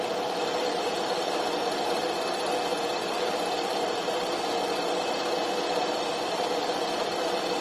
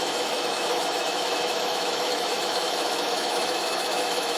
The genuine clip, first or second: first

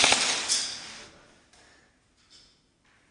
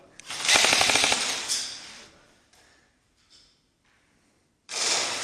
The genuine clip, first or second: first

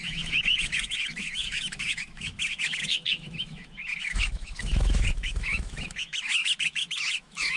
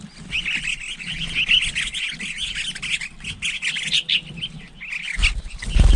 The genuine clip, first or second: second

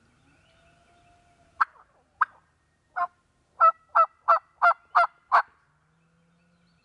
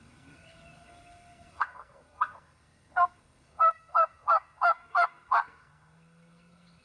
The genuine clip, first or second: first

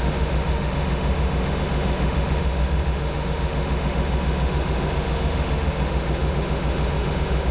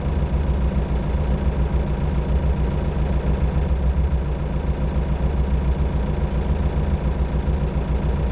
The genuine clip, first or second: second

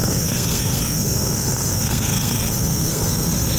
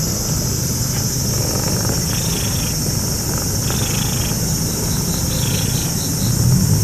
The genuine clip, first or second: second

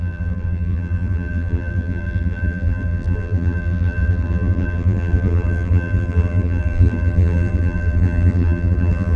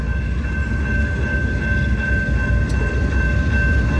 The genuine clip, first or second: second